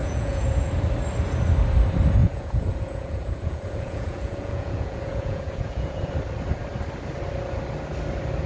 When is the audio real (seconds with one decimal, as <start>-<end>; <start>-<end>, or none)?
0.7-2.2; 6.1-8.5